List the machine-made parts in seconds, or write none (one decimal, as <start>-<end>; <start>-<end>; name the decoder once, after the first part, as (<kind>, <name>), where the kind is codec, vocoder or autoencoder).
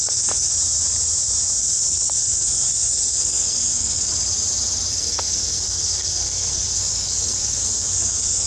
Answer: 0.0-0.5 (codec, SNAC); 1.6-4.1; 4.9-8.5